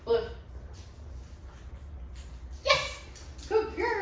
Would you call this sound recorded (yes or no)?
yes